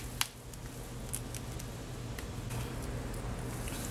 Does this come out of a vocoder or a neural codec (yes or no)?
no